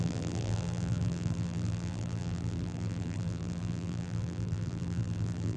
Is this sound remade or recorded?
remade